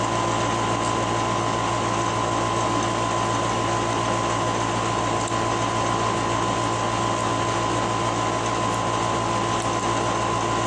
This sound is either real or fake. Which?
real